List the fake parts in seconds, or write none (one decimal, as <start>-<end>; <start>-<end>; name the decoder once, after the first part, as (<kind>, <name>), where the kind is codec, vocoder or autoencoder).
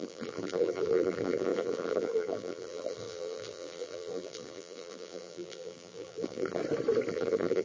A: 0.0-6.6 (vocoder, BigVGAN v2); 7.1-7.6